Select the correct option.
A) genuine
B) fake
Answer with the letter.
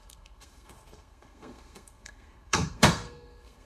B